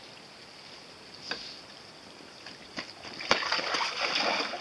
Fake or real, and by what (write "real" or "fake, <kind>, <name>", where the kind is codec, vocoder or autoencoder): real